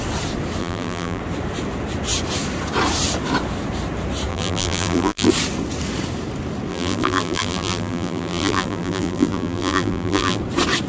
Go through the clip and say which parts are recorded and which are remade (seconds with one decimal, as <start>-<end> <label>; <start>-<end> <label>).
0.0-0.6 recorded; 0.6-1.2 remade; 1.2-4.3 recorded; 4.3-5.3 remade; 5.3-6.7 recorded; 6.7-10.4 remade; 10.4-10.9 recorded